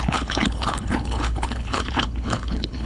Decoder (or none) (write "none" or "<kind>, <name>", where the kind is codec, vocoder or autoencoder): codec, HILCodec